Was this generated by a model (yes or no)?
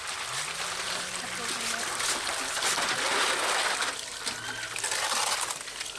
no